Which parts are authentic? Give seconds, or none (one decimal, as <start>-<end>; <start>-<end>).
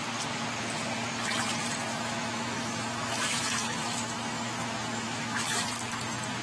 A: 0.0-1.9; 5.7-6.4